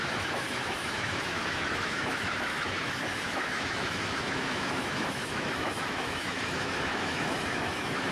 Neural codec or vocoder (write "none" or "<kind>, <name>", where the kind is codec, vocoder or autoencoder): autoencoder, DAC-VAE